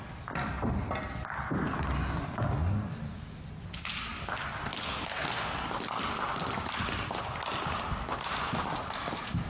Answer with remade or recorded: recorded